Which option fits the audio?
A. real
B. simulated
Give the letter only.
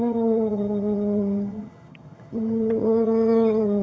B